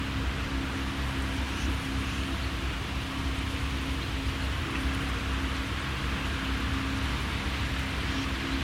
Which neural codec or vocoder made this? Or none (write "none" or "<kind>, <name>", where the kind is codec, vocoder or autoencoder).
none